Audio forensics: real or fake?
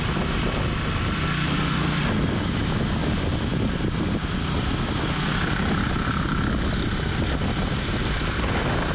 real